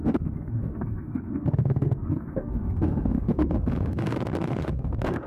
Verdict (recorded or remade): remade